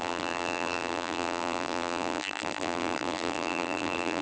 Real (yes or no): no